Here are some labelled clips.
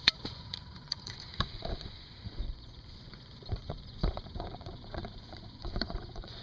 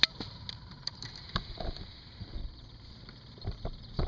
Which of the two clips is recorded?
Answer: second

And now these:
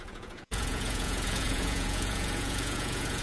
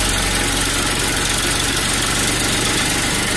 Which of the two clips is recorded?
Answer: second